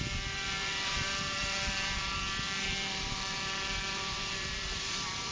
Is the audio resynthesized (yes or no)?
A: yes